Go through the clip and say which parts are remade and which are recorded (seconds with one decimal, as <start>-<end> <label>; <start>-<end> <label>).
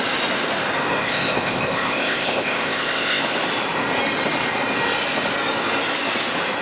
0.0-1.0 recorded; 1.0-3.2 remade; 3.2-6.6 recorded